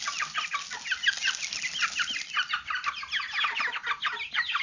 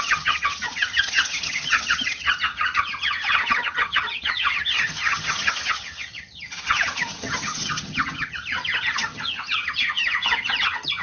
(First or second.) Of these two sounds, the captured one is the first